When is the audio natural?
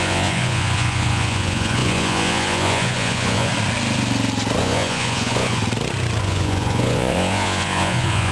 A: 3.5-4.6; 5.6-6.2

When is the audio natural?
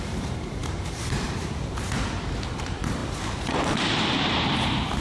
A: none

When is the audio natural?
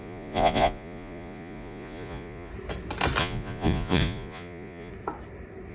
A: 2.5-3.2; 4.9-5.7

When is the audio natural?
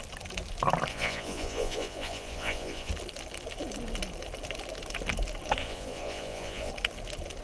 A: 0.0-0.9; 2.9-5.6; 6.7-7.4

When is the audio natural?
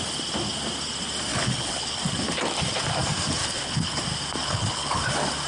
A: 0.0-1.3; 2.0-3.4; 4.0-4.4; 5.0-5.5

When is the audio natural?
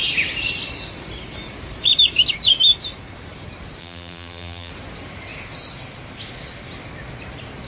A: 0.0-3.8; 4.7-7.7